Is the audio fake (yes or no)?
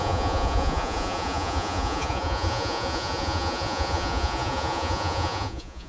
yes